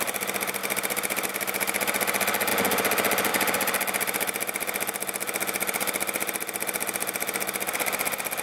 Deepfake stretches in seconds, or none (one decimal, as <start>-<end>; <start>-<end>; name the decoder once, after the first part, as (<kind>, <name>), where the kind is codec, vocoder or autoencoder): none